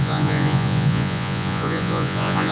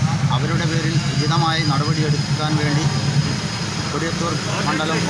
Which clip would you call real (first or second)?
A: second